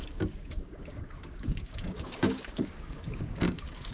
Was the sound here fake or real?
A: fake